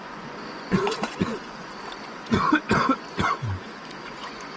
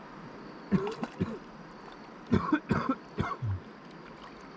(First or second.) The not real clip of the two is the first